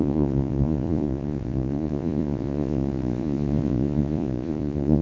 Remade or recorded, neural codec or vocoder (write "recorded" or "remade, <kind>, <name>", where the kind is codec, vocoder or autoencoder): remade, vocoder, Vocos